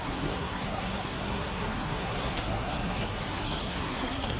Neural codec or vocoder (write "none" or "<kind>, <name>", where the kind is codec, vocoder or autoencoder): codec, SNAC